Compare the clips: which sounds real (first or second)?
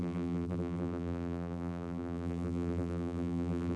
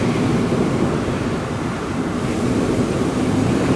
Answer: second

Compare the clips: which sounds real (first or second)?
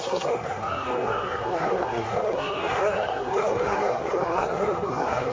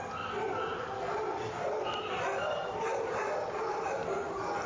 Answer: second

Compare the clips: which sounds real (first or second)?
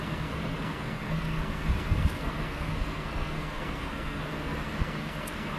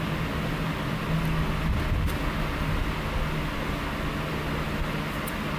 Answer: second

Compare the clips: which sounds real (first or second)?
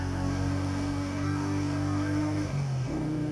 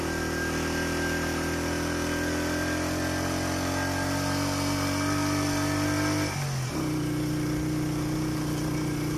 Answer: second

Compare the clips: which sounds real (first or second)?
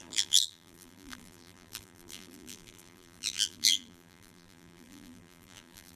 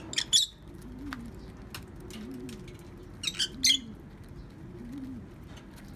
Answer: second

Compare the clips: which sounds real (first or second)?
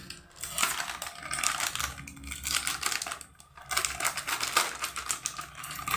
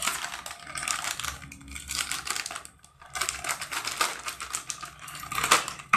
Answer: first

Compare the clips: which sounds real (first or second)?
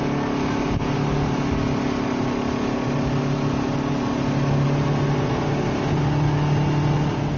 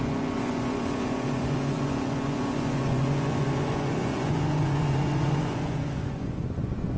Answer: first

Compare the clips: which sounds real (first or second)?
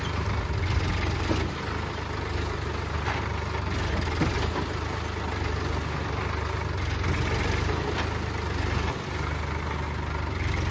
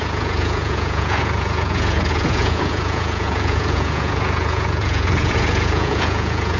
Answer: first